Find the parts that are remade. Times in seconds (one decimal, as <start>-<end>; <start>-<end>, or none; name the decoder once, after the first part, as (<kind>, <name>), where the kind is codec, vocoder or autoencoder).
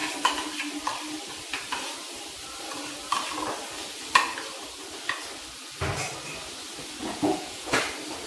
7.0-7.8 (vocoder, Vocos)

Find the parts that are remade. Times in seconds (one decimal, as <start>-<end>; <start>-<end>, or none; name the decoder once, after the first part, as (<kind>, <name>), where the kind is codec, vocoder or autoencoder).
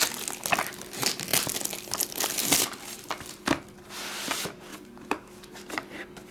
4.7-5.6 (codec, DAC)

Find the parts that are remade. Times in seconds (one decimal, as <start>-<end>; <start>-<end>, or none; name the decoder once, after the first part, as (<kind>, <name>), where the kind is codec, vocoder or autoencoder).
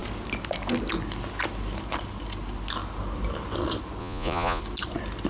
4.0-4.6 (vocoder, Vocos)